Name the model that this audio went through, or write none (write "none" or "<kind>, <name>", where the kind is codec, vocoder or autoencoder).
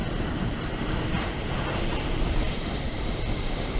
vocoder, BigVGAN v2